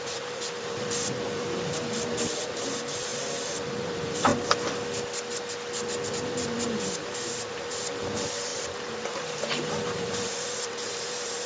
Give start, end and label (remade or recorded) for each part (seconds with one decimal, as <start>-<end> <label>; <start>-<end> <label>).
0.0-4.3 remade; 4.3-6.1 recorded; 6.1-11.5 remade